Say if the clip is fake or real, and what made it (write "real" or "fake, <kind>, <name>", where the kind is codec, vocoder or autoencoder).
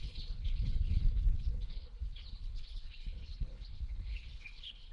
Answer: fake, codec, HILCodec